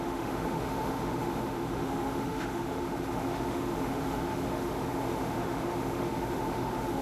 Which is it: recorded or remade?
remade